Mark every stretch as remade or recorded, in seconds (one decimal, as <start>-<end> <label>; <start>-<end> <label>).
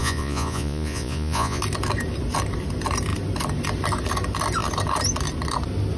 0.0-1.6 remade; 1.6-6.0 recorded